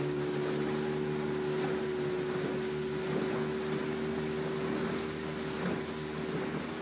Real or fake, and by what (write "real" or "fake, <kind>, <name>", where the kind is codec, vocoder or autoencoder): real